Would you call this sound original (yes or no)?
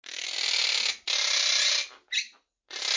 yes